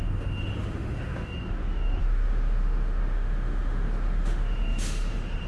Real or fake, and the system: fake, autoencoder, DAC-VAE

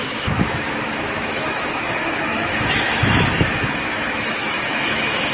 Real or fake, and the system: fake, autoencoder, DAC-VAE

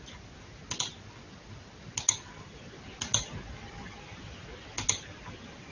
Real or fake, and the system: real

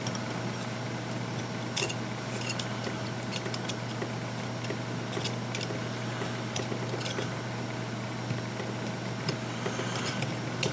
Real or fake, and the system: real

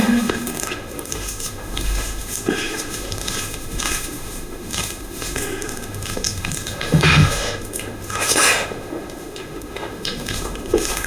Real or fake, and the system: fake, autoencoder, DAC-VAE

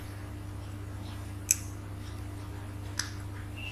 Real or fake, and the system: real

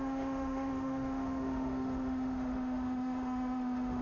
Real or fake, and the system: fake, autoencoder, DAC-VAE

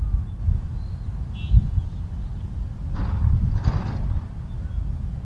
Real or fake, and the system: real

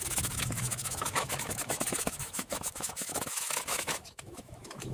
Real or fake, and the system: fake, autoencoder, DAC-VAE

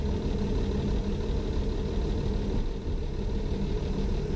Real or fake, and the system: real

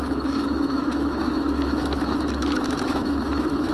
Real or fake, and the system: fake, autoencoder, DAC-VAE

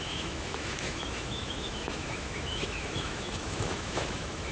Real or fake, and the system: fake, autoencoder, DAC-VAE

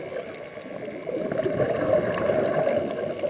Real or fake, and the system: real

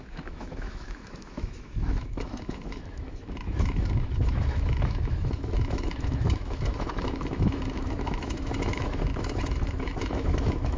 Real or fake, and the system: fake, autoencoder, DAC-VAE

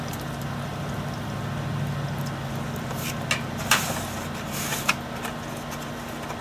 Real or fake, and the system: real